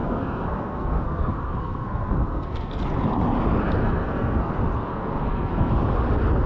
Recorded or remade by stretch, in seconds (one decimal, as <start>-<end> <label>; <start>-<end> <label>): 0.0-2.8 remade; 2.8-3.8 recorded; 3.8-4.5 remade; 4.5-4.9 recorded; 4.9-5.7 remade; 5.7-6.5 recorded